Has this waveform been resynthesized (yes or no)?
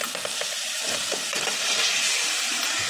no